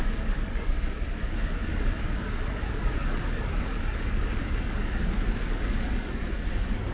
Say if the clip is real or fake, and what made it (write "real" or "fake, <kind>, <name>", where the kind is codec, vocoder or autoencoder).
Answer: fake, codec, DAC